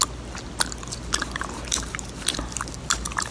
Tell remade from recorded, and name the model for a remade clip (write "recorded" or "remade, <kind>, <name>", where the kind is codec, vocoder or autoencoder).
recorded